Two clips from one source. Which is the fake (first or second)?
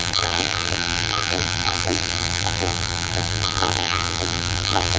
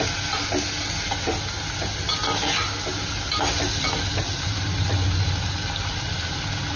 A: first